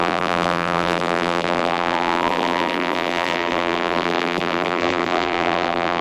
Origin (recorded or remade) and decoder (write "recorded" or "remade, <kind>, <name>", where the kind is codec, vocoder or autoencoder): remade, vocoder, BigVGAN v2